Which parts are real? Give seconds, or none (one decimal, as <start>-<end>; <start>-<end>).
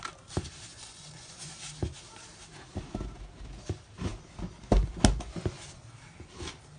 0.0-0.7; 1.5-6.8